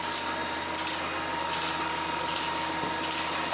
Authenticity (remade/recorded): recorded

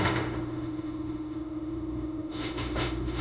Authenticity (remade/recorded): remade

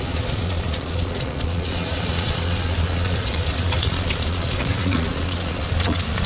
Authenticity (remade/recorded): remade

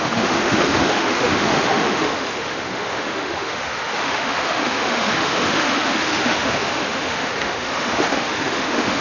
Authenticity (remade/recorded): remade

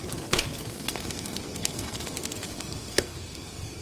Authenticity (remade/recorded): remade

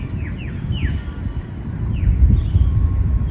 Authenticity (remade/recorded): recorded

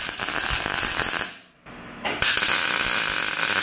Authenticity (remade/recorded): recorded